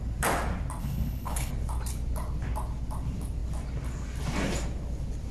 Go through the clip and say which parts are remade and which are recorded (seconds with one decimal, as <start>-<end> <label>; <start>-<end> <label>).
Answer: 0.0-0.8 recorded; 0.8-1.5 remade; 1.5-5.3 recorded